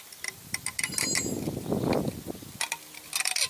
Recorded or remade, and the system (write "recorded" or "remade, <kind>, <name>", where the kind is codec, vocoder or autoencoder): recorded